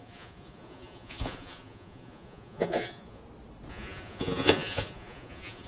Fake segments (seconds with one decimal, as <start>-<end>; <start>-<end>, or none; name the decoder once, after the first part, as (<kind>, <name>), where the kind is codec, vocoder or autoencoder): 0.0-3.2 (vocoder, Vocos); 3.7-5.7